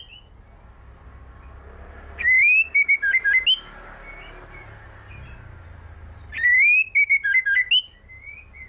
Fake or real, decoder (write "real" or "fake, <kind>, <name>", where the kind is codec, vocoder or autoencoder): real